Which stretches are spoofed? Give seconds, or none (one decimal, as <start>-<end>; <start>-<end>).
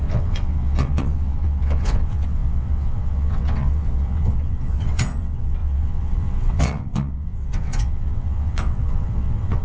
0.0-9.6